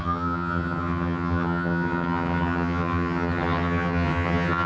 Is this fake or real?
fake